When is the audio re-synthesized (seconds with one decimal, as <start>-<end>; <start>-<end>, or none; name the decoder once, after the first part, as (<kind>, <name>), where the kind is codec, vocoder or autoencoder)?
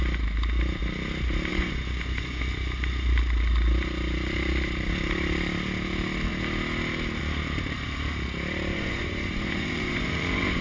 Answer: 1.5-2.4 (vocoder, Vocos); 8.7-10.6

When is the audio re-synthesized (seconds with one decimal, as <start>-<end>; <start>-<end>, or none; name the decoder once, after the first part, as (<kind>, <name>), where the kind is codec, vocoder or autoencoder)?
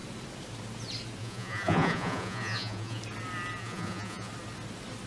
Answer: 1.2-3.0 (vocoder, Vocos); 3.6-4.3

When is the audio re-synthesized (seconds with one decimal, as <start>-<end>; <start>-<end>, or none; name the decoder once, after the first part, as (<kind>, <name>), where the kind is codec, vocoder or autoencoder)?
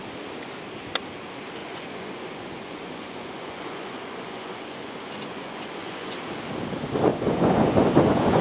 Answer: 1.6-6.2 (vocoder, Vocos); 7.1-8.4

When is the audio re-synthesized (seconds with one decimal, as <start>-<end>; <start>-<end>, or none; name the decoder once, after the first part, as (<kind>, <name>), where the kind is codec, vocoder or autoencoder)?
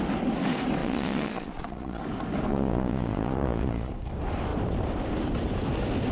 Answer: 0.8-2.0 (vocoder, Vocos); 2.5-3.9